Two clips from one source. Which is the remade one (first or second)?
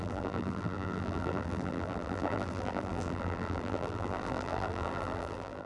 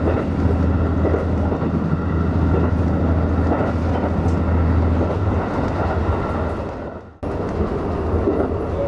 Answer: first